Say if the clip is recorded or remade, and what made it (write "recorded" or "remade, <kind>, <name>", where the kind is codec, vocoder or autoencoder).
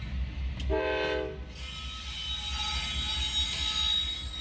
recorded